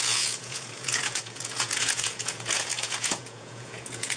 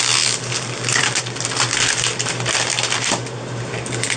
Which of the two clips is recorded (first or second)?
second